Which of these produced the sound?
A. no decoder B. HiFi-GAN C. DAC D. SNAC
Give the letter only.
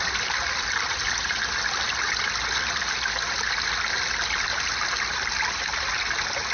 A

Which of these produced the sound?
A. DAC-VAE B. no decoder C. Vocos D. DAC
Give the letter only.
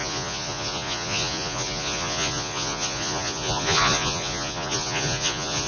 C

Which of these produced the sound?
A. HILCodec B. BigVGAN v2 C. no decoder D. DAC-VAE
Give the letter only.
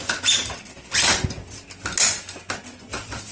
C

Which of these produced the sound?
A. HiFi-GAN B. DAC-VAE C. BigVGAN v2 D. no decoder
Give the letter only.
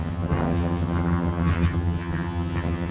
A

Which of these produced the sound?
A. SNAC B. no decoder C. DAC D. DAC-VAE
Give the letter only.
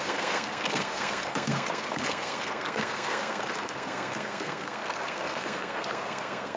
A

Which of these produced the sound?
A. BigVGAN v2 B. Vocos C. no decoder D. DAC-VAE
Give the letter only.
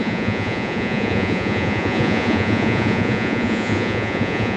B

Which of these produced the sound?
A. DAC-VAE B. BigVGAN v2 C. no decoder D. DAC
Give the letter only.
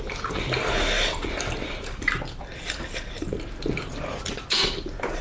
C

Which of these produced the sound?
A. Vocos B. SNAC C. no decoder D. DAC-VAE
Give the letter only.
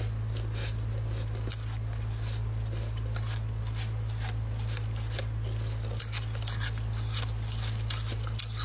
C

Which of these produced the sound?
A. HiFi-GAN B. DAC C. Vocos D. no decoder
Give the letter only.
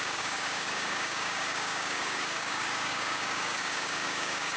B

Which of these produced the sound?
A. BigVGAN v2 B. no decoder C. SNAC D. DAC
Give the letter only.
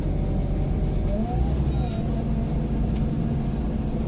B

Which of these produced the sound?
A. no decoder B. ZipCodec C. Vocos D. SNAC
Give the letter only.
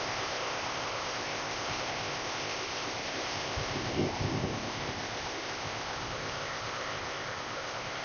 B